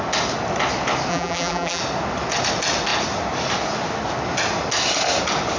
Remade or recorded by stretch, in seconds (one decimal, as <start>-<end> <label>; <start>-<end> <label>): 0.0-1.1 recorded; 1.1-1.8 remade; 1.8-5.6 recorded